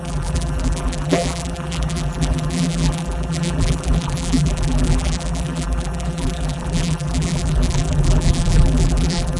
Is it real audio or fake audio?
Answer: fake